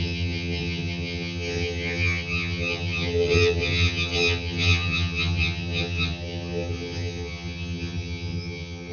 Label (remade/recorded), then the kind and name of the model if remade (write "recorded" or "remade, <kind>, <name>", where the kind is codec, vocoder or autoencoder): remade, vocoder, HiFi-GAN